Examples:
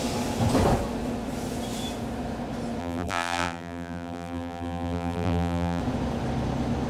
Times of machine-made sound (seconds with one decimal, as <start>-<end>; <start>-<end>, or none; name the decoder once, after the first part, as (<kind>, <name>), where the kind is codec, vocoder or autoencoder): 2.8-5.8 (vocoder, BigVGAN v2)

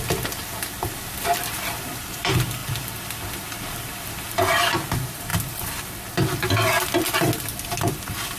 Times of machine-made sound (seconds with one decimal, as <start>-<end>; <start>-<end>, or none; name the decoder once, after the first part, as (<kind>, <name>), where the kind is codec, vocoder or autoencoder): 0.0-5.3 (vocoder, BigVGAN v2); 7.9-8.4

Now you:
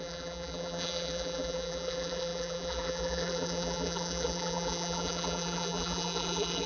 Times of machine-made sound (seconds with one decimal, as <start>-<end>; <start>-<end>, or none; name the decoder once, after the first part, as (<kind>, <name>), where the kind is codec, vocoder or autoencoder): 0.0-6.7 (vocoder, BigVGAN v2)